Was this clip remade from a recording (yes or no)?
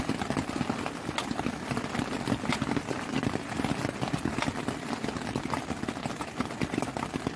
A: no